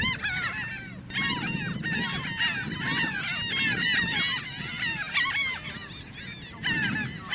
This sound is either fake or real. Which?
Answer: real